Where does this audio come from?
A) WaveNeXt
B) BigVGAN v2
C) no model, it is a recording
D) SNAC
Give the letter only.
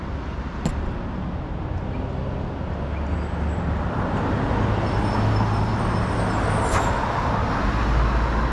C